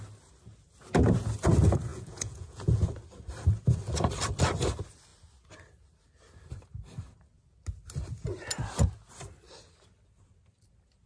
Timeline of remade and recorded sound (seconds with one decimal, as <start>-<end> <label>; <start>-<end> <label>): 0.0-1.9 recorded; 1.9-2.8 remade; 2.8-11.1 recorded